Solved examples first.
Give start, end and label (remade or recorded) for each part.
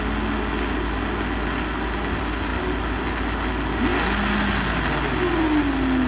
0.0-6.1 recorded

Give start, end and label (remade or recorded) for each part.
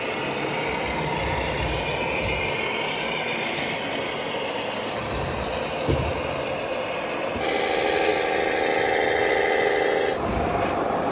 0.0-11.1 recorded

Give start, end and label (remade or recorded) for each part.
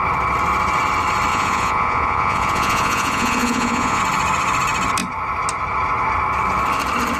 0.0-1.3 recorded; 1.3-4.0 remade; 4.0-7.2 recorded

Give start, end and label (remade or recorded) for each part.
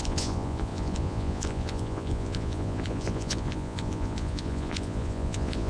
0.0-5.7 remade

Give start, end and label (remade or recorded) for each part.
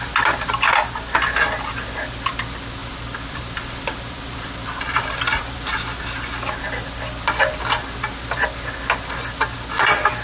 0.0-2.8 recorded; 2.8-5.8 remade; 5.8-10.2 recorded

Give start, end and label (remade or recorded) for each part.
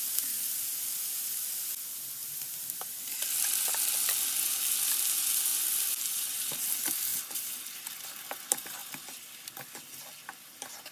0.0-2.2 recorded; 2.2-3.6 remade; 3.6-5.5 recorded; 5.5-6.5 remade; 6.5-7.1 recorded; 7.1-8.4 remade; 8.4-10.9 recorded